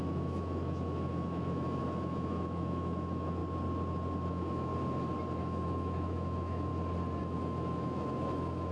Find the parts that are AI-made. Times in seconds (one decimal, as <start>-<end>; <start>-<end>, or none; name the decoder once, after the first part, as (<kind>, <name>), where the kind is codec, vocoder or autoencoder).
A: 0.0-3.4 (autoencoder, DAC-VAE); 4.3-4.7; 5.4-6.7; 7.2-8.7